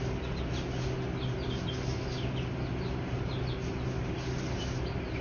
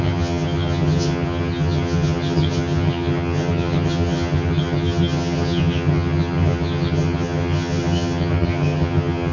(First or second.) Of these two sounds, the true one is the first